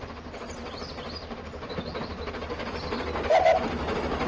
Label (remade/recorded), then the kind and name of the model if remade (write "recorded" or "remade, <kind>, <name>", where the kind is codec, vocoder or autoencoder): recorded